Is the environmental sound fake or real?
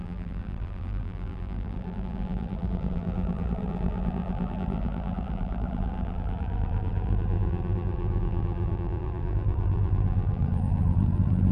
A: fake